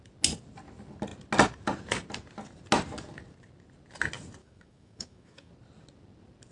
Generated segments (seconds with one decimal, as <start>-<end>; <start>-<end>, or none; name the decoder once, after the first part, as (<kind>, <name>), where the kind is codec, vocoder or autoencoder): 4.4-5.5 (autoencoder, DAC-VAE)